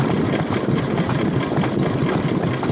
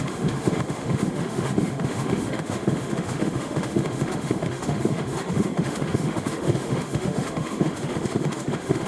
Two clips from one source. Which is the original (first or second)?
first